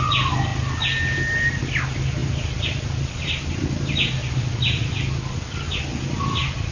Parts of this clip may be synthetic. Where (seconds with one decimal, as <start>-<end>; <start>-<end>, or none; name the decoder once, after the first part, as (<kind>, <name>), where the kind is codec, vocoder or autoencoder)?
none